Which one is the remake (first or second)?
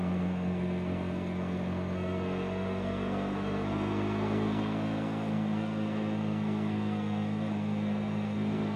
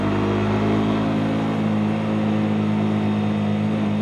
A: first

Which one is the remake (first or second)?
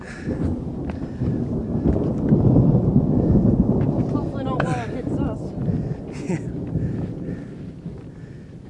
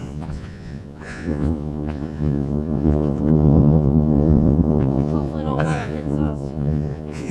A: second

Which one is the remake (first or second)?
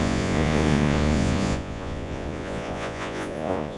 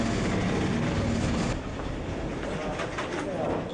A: first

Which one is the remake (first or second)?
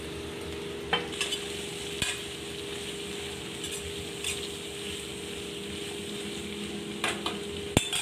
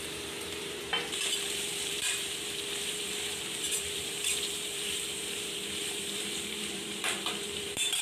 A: second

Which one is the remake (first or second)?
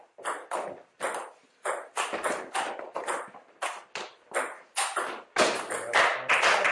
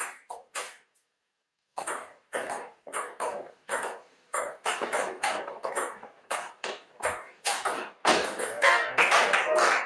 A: second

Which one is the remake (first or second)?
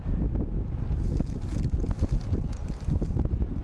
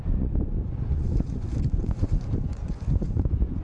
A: second